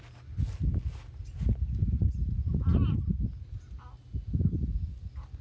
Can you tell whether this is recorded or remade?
recorded